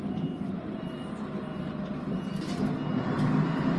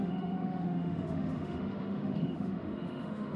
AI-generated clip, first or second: second